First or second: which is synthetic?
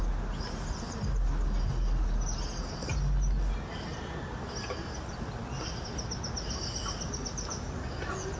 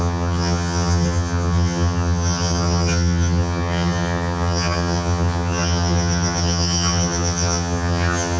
second